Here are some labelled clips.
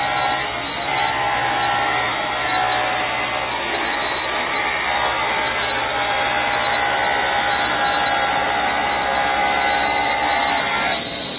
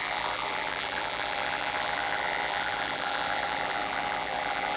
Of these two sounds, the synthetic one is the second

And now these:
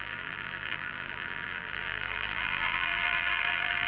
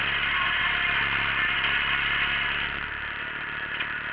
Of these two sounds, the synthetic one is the first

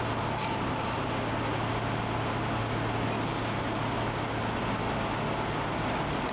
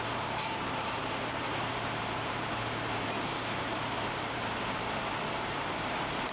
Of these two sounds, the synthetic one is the second